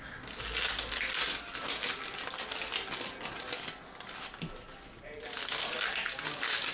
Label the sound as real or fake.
real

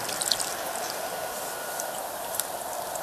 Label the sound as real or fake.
real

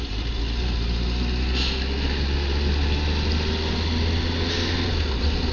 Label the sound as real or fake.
real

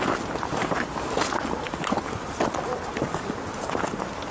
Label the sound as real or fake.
real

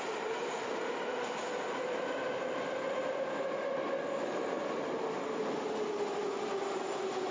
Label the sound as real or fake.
real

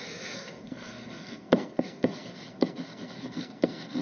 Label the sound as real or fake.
fake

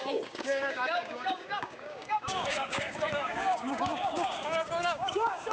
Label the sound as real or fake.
fake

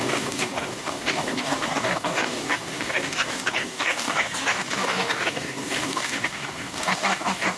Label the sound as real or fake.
fake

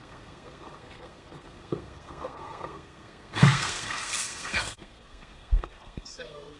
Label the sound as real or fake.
fake